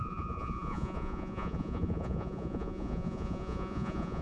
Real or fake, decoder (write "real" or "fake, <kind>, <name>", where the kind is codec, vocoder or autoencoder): fake, vocoder, Vocos